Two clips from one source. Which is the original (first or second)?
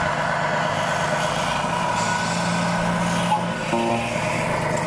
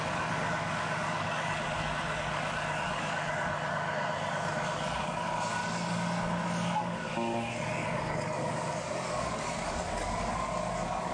first